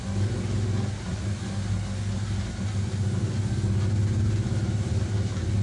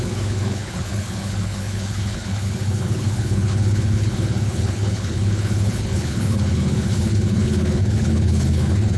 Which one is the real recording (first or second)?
first